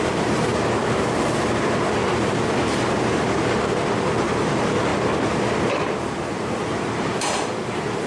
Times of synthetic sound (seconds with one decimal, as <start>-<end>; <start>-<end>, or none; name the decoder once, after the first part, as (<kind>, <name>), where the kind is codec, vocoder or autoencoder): 0.0-0.5 (vocoder, BigVGAN v2); 2.6-4.9; 5.7-8.1